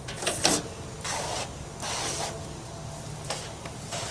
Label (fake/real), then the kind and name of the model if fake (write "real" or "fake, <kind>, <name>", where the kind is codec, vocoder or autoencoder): real